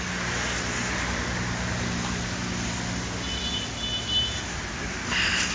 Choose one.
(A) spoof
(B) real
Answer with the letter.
B